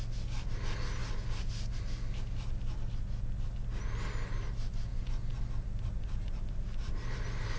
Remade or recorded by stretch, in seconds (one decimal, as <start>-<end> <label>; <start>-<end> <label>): 0.0-4.9 recorded; 4.9-5.4 remade; 5.4-7.6 recorded